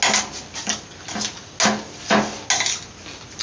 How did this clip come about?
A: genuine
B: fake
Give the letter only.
A